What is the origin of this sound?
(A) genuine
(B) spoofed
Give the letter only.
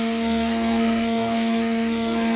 B